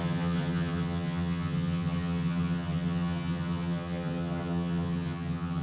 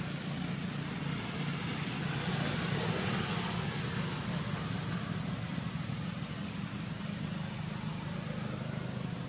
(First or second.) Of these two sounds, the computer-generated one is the first